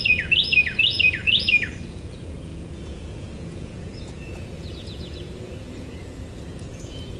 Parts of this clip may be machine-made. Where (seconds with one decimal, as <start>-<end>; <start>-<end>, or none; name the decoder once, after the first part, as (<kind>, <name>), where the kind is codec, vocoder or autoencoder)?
0.0-7.2 (vocoder, Vocos)